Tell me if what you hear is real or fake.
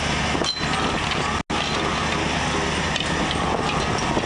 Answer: real